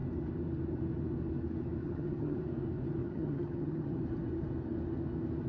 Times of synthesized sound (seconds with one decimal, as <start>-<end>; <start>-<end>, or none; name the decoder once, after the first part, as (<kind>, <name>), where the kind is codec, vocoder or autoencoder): 1.8-2.4 (vocoder, HiFi-GAN); 3.0-3.9